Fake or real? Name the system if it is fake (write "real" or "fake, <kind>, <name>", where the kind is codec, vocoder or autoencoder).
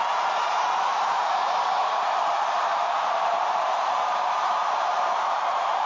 fake, vocoder, BigVGAN v2